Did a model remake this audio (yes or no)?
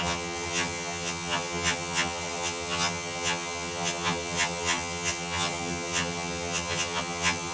yes